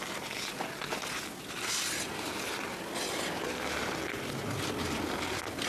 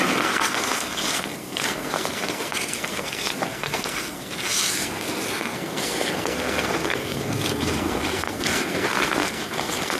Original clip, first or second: first